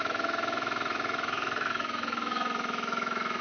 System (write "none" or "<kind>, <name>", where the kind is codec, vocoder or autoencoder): autoencoder, DAC-VAE